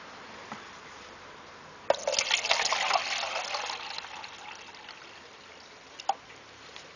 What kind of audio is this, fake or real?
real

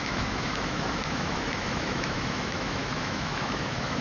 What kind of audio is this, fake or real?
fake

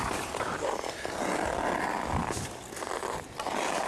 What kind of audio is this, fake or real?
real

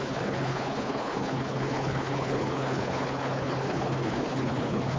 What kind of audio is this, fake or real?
fake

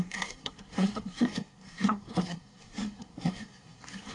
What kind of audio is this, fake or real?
fake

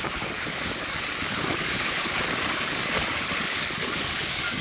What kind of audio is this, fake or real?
fake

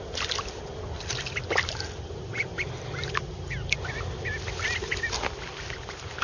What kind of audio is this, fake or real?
real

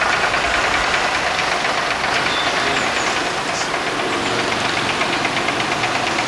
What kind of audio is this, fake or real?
fake